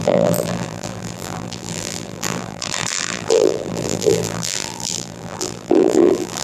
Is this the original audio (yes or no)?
no